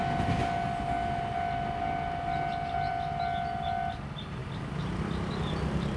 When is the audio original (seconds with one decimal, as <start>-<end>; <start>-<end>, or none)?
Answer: 0.0-6.0